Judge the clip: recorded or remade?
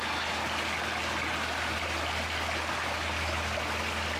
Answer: recorded